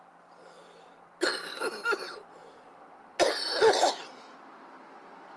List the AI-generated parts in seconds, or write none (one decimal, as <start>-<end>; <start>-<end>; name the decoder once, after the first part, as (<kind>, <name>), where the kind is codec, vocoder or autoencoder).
none

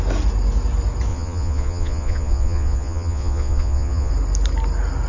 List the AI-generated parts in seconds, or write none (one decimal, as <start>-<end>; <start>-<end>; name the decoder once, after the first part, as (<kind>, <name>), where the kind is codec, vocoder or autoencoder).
1.1-4.1 (vocoder, Vocos)